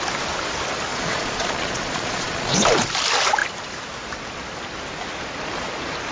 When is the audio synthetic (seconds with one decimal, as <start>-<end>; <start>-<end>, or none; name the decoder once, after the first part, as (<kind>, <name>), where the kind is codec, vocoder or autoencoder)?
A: 0.9-2.5 (vocoder, Vocos)